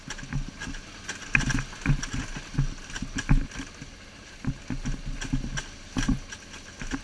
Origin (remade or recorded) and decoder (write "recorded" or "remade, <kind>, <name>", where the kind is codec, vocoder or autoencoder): recorded